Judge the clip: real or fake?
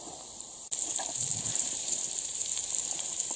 fake